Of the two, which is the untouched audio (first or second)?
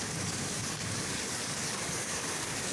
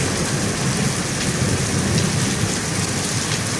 second